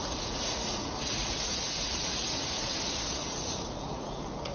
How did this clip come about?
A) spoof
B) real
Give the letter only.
A